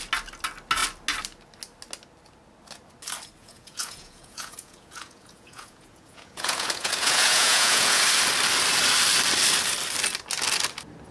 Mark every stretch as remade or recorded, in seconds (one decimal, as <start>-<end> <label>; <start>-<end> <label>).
0.0-3.4 recorded; 3.4-8.0 remade; 8.0-11.1 recorded

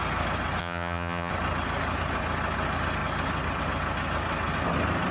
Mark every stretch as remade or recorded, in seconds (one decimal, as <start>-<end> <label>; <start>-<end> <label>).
0.0-0.6 recorded; 0.6-1.3 remade; 1.3-5.1 recorded